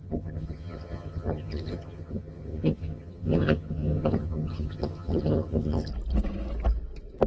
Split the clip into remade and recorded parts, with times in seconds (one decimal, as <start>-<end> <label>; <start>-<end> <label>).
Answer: 0.0-5.9 remade; 5.9-7.3 recorded